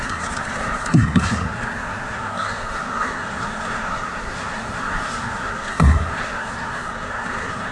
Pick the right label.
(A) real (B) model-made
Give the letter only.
B